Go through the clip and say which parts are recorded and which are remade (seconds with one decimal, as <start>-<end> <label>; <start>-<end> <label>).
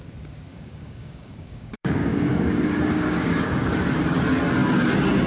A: 0.0-0.5 recorded; 0.5-3.7 remade; 3.7-5.3 recorded